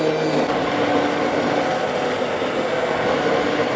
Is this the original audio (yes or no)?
yes